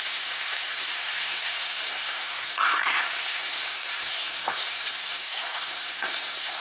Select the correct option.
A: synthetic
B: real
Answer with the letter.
A